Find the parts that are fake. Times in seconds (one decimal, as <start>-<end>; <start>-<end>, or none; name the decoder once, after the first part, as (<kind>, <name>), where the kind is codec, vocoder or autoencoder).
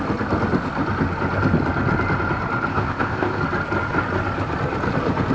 2.7-3.4 (codec, ZipCodec)